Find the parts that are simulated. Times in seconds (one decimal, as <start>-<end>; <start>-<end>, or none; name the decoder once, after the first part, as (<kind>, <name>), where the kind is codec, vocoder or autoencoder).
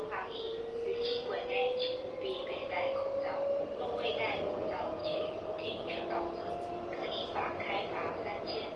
5.0-6.1 (codec, HILCodec)